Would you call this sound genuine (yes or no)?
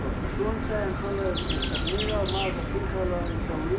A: yes